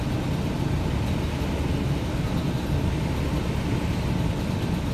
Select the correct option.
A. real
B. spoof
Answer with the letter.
A